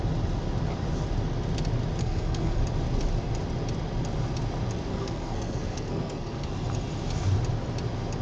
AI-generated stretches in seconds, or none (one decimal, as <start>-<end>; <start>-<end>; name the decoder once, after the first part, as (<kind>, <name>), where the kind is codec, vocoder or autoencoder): 2.0-2.6 (codec, SNAC); 4.9-6.5